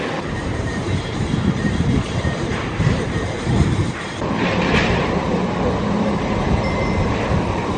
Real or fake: fake